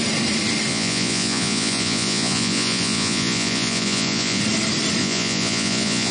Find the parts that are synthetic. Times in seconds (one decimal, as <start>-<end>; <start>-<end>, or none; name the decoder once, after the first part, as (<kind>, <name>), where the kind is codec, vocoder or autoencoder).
0.7-4.4 (vocoder, Vocos); 5.0-6.1